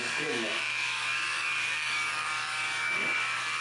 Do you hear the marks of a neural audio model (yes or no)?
yes